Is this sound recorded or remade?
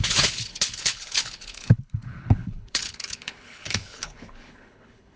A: remade